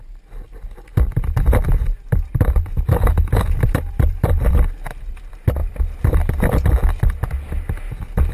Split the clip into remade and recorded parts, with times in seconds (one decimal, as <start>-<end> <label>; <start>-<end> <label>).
0.0-0.9 recorded; 0.9-4.5 remade; 4.5-5.6 recorded; 5.6-6.3 remade; 6.3-8.3 recorded